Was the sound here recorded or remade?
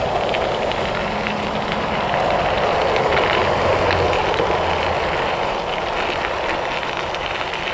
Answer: recorded